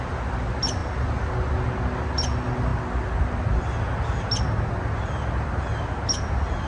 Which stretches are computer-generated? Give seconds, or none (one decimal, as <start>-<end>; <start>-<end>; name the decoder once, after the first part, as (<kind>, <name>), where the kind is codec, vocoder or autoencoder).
none